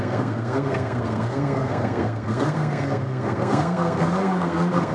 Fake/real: fake